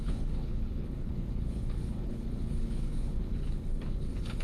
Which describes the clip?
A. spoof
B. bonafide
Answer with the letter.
A